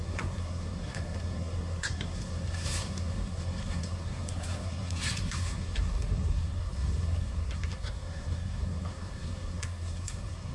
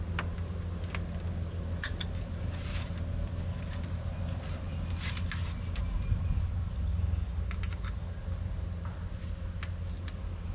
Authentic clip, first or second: second